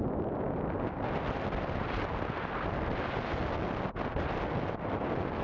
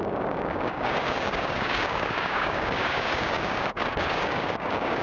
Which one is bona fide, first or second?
first